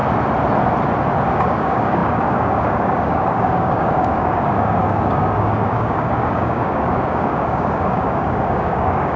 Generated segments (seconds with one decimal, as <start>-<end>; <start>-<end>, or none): 1.3-9.2